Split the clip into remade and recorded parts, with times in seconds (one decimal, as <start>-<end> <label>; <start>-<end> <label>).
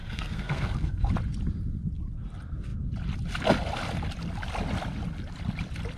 0.0-1.1 remade; 1.1-6.0 recorded